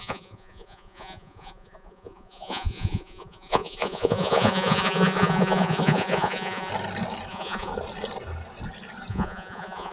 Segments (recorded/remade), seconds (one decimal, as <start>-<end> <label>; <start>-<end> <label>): 0.0-6.7 remade; 6.7-7.3 recorded; 7.3-7.7 remade; 7.7-9.1 recorded; 9.1-9.9 remade